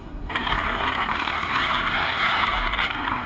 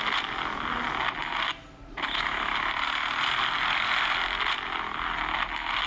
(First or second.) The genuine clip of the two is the second